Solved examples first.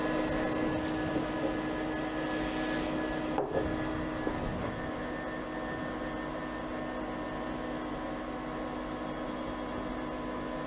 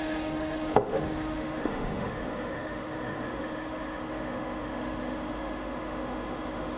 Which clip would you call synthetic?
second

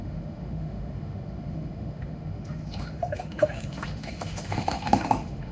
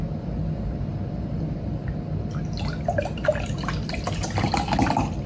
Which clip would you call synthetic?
first